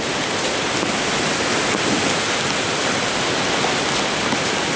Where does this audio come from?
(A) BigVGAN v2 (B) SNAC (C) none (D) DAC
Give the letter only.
C